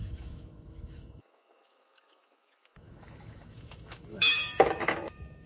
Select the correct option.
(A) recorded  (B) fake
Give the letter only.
B